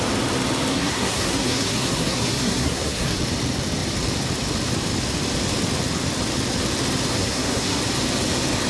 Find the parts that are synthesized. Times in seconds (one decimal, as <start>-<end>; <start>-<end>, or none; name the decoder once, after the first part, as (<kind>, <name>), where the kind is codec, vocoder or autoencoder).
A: 0.7-3.2 (codec, SNAC); 7.1-7.8

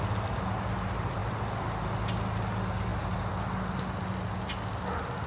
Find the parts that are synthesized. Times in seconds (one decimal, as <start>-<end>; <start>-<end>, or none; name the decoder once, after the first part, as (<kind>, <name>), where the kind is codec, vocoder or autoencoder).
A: none

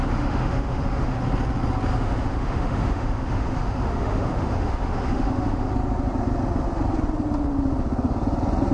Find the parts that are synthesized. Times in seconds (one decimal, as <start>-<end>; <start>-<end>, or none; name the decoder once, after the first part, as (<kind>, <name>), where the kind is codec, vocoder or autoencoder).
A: 0.0-1.2 (autoencoder, DAC-VAE); 1.9-5.7

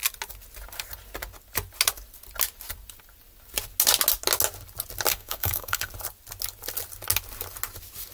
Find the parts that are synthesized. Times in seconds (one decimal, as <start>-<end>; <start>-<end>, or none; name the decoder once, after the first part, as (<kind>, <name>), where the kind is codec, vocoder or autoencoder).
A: 5.1-5.9 (codec, SNAC)

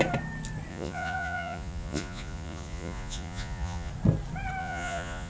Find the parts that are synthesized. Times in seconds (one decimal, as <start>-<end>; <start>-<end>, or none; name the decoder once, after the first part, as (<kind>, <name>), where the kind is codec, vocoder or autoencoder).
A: 0.7-3.9 (vocoder, Vocos); 4.6-5.3

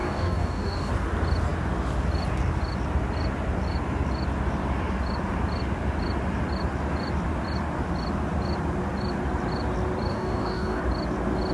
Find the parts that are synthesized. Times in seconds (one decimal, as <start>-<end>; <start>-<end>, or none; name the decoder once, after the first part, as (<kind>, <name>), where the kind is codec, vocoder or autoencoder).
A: 0.0-0.9 (codec, DAC); 10.1-10.8

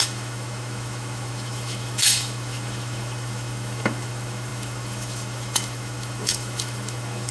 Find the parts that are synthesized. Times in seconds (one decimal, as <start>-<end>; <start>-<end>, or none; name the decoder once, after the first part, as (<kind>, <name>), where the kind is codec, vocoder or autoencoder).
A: 0.0-7.3 (autoencoder, DAC-VAE)